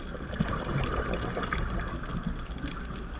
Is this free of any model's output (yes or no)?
yes